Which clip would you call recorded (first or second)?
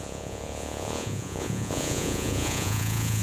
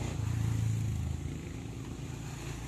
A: second